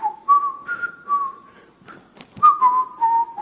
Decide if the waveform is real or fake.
real